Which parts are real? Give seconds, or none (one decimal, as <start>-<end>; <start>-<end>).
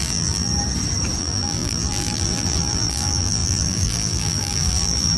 0.5-1.2